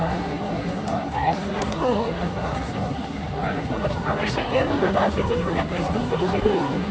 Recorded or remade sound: remade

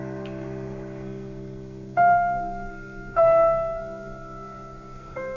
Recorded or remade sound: remade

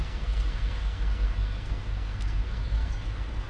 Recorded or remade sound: remade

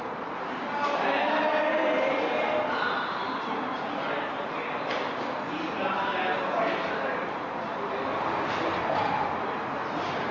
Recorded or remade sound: recorded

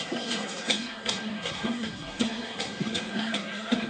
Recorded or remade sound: remade